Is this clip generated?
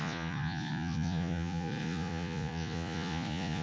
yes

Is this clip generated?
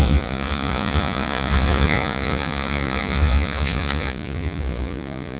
yes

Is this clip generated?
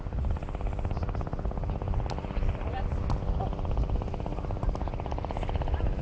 no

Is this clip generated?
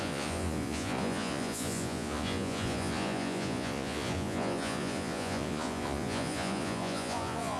yes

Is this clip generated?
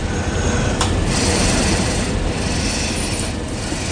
no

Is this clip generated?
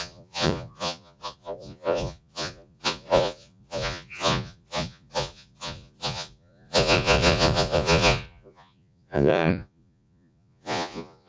yes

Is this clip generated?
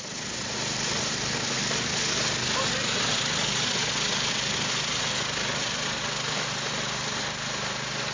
no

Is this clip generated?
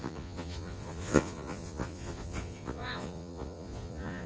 yes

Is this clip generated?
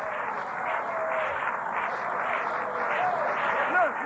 no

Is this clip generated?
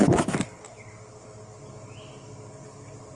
no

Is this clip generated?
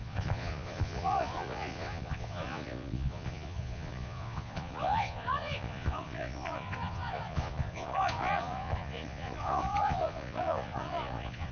yes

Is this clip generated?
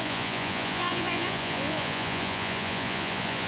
yes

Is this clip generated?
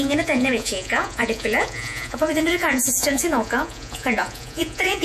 yes